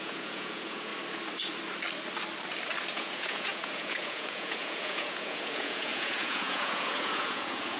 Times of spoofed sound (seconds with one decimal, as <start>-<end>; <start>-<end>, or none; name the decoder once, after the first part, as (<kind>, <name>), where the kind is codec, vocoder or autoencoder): 0.0-0.9 (vocoder, Vocos); 2.9-7.8